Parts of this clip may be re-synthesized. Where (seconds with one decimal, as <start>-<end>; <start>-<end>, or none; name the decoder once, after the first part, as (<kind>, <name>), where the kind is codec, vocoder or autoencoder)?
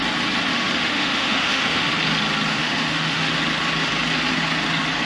0.5-1.9 (autoencoder, DAC-VAE); 2.5-3.3